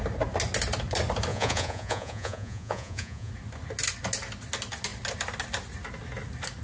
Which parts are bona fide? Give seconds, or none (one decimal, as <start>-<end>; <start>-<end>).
0.0-1.3; 3.3-6.6